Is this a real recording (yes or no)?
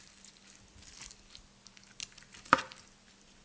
yes